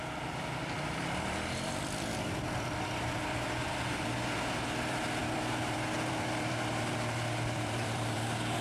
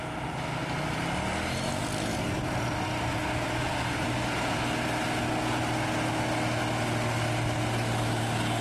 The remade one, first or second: first